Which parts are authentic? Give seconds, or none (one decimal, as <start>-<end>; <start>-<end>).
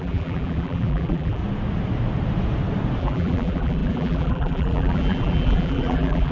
1.4-3.0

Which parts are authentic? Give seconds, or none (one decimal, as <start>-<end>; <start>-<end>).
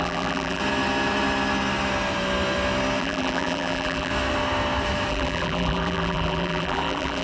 0.6-3.0; 4.1-5.1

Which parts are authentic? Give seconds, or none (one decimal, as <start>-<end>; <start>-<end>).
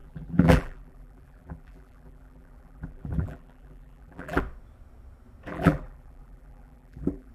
4.4-5.5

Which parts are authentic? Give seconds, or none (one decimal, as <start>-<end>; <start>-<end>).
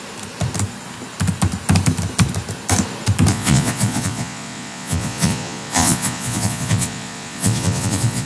0.0-3.3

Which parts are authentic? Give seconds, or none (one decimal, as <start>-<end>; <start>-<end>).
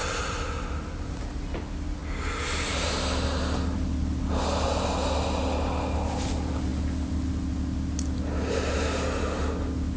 0.0-10.0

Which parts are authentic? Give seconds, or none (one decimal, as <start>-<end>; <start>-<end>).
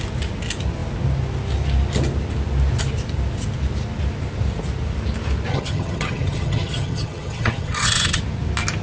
0.0-5.5; 8.2-8.8